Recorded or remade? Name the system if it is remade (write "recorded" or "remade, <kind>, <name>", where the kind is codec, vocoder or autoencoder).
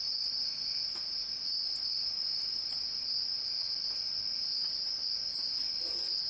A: recorded